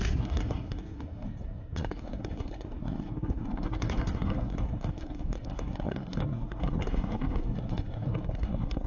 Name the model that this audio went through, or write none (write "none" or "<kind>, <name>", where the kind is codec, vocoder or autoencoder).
codec, SNAC